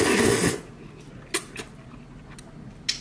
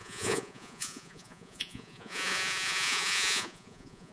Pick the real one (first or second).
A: first